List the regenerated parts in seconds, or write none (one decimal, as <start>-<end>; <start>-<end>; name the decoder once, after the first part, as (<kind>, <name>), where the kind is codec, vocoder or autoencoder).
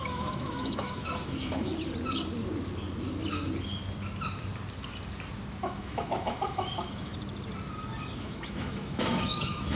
0.0-1.7 (autoencoder, DAC-VAE); 5.6-7.1; 8.2-9.7